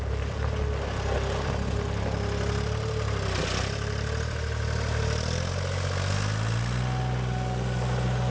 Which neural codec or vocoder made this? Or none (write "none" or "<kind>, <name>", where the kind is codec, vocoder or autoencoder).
none